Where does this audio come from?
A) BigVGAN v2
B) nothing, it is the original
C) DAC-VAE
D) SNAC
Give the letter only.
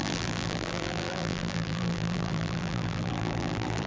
A